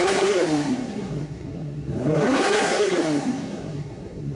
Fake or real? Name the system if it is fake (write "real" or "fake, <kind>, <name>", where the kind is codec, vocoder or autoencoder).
fake, codec, SNAC